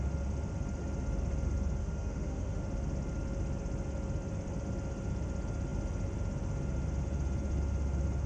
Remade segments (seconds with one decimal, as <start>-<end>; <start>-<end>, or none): 1.8-2.6